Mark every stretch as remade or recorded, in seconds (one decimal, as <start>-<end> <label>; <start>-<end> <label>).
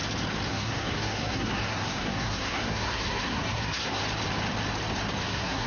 0.0-0.5 recorded; 0.5-4.0 remade; 4.0-5.2 recorded; 5.2-5.7 remade